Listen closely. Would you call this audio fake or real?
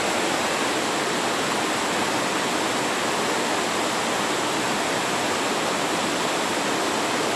real